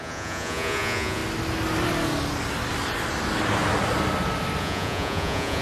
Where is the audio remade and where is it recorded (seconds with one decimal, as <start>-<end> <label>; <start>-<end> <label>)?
0.0-1.2 remade; 1.2-4.6 recorded; 4.6-5.6 remade